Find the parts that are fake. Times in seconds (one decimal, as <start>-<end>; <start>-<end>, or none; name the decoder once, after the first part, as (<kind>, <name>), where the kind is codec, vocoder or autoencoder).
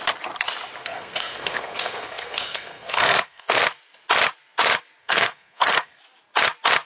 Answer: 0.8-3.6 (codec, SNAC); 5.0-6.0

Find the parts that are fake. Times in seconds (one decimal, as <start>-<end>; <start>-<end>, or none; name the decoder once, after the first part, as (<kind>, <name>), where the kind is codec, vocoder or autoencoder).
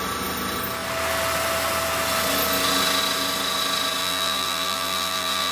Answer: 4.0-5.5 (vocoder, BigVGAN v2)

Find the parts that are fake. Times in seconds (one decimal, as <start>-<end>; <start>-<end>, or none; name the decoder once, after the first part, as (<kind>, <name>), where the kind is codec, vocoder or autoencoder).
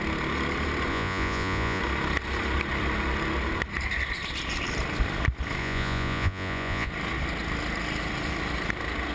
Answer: 0.9-1.8 (vocoder, Vocos); 5.6-6.9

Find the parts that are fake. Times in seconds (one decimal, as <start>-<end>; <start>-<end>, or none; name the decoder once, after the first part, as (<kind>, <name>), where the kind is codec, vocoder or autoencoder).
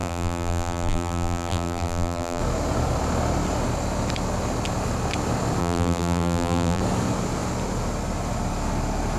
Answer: 0.0-2.4 (vocoder, BigVGAN v2); 5.6-6.8